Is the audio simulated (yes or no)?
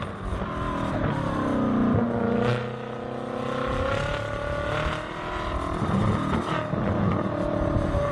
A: no